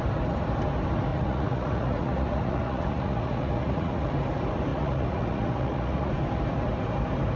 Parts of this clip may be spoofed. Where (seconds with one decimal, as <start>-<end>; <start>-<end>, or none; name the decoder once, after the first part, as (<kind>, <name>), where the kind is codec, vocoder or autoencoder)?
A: 1.1-4.1 (vocoder, Vocos); 4.7-6.1